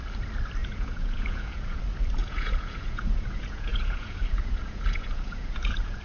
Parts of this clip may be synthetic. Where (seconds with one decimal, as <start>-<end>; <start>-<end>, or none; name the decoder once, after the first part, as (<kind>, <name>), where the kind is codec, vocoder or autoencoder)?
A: 0.6-1.8 (vocoder, Vocos); 2.2-6.0